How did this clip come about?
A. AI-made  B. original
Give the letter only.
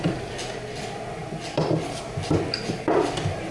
B